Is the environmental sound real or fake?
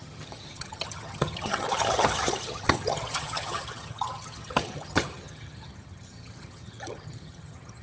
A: fake